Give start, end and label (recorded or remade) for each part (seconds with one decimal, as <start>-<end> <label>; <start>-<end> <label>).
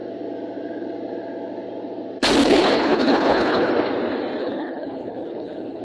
0.0-2.4 recorded; 2.4-3.7 remade; 3.7-4.4 recorded; 4.4-5.8 remade